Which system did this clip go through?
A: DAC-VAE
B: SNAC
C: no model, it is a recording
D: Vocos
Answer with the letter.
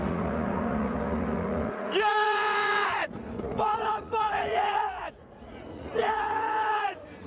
D